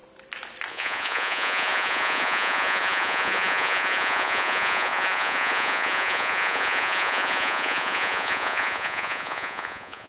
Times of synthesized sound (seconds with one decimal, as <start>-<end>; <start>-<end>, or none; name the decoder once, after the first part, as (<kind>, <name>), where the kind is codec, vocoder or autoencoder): 0.7-10.1 (vocoder, Vocos)

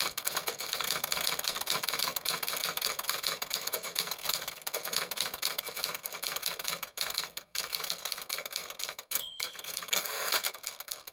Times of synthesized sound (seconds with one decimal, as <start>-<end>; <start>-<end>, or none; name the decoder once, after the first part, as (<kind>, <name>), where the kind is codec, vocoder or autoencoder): 0.0-11.1 (codec, SNAC)

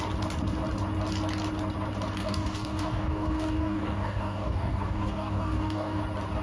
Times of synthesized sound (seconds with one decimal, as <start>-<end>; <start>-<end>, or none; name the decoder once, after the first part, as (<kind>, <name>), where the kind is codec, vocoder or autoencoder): 2.2-6.0 (codec, DAC)

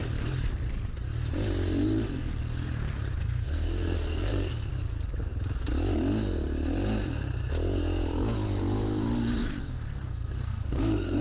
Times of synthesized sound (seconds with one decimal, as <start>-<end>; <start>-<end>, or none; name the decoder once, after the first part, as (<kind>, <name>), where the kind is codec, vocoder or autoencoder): 3.2-4.7 (codec, SNAC); 9.6-11.2

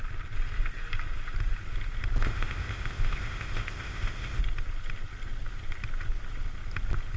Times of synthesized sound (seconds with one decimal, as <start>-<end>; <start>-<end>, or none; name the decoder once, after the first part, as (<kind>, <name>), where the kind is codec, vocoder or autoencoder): 2.2-4.4 (codec, ZipCodec)

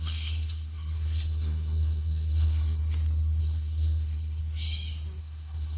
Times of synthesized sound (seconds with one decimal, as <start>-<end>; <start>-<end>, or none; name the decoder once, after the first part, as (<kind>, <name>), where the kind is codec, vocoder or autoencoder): 0.0-2.8 (codec, SNAC); 3.4-4.4; 5.2-5.8

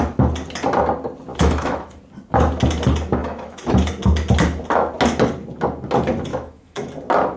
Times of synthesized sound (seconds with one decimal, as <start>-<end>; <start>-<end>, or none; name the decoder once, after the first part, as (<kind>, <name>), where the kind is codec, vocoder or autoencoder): 1.3-2.0 (autoencoder, DAC-VAE); 3.2-3.9; 6.3-6.9

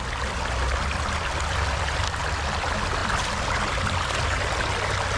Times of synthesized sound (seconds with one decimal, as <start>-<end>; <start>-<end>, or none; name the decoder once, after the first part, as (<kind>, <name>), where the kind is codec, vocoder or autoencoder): 3.0-3.7 (vocoder, BigVGAN v2)